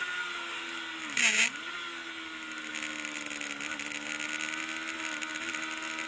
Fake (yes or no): no